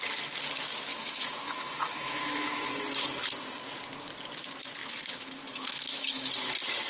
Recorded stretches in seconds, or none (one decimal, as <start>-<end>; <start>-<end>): 0.0-0.9; 2.6-4.8; 6.3-6.9